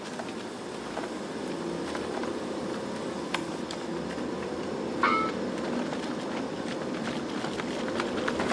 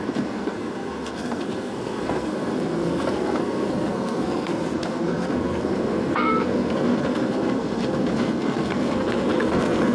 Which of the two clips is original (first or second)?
first